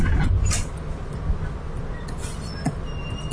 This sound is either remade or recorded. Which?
recorded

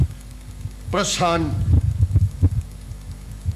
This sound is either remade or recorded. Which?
remade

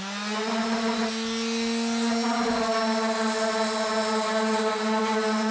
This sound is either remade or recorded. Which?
recorded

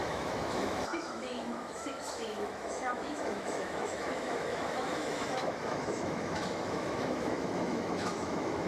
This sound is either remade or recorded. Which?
remade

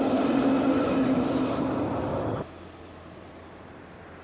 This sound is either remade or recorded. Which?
recorded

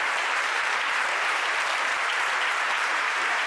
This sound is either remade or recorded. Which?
remade